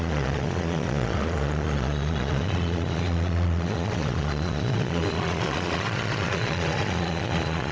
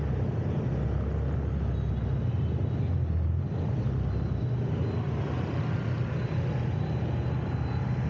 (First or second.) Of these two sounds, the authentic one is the second